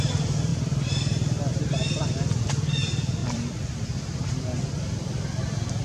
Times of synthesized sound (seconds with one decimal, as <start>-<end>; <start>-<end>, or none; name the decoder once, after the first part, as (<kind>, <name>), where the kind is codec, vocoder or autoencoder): 0.5-2.5 (vocoder, BigVGAN v2); 3.2-4.4